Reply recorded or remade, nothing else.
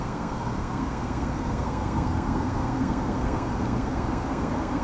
remade